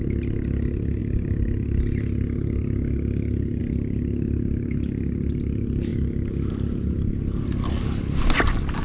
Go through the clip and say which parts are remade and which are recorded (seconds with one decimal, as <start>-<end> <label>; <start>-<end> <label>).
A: 0.0-8.8 recorded